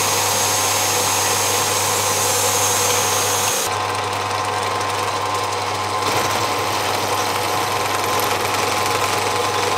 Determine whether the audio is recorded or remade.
recorded